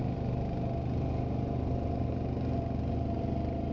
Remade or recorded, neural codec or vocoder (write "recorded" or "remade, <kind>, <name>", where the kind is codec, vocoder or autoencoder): recorded